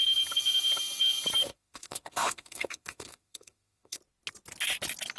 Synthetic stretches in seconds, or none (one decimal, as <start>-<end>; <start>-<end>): 1.4-4.0